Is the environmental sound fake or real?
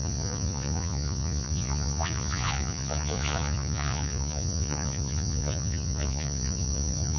fake